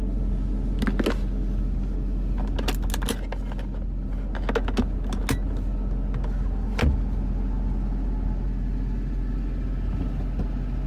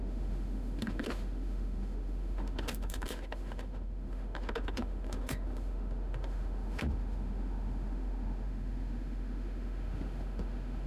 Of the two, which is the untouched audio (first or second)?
first